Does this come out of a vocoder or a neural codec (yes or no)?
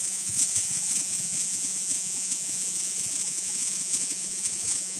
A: yes